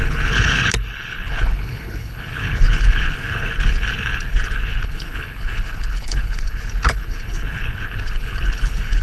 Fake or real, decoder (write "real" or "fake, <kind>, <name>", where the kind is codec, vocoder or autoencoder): fake, codec, HILCodec